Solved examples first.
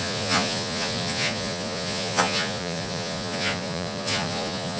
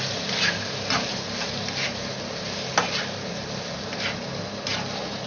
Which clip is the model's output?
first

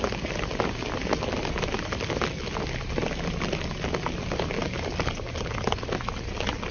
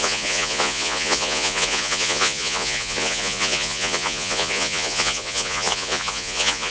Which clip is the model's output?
second